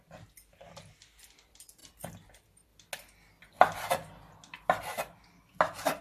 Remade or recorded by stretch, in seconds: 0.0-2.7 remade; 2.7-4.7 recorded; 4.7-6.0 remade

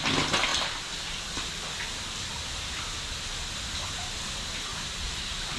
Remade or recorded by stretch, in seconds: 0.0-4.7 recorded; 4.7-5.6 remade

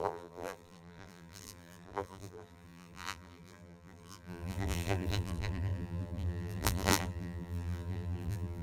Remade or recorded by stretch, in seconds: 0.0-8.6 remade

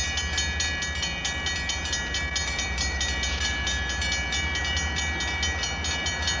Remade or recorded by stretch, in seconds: 0.0-2.4 recorded; 2.4-3.0 remade; 3.0-6.4 recorded

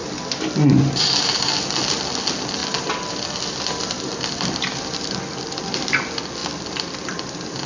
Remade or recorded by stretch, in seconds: 0.0-2.0 remade; 2.0-2.6 recorded; 2.6-5.6 remade; 5.6-7.7 recorded

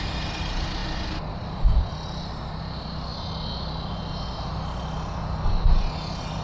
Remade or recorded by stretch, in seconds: 0.0-0.8 recorded; 0.8-1.9 remade; 1.9-6.4 recorded

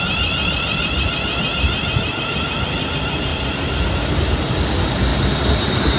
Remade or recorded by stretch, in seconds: 0.0-3.3 recorded; 3.3-3.8 remade; 3.8-6.0 recorded